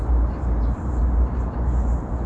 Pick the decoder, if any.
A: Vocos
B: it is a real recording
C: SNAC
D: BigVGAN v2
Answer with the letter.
D